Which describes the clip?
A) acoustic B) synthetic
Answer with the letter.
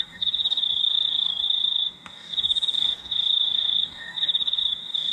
B